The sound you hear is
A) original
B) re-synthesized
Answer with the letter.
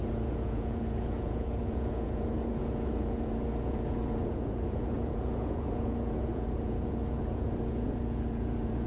B